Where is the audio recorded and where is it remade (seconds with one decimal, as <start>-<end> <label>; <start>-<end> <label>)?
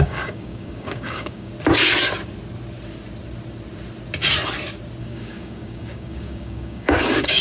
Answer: 0.0-1.5 remade; 1.5-5.0 recorded; 5.0-7.4 remade